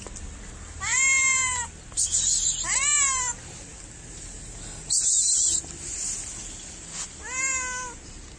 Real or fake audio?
real